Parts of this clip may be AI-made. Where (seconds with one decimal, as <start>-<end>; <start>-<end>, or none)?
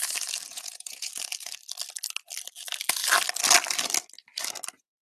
0.5-1.1